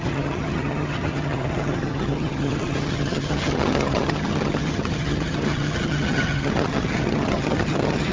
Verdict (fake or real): fake